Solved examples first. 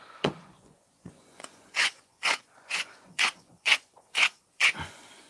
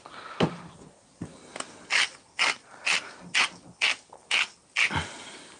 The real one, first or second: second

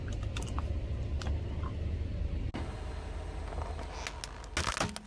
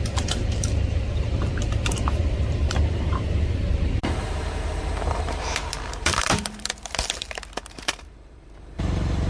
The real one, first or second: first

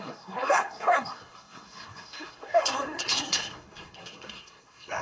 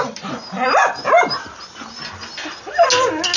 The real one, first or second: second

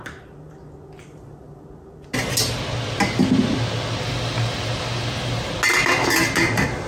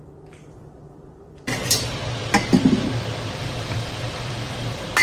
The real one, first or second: first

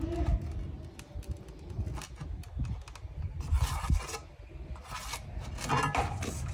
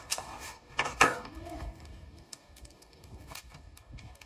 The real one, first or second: first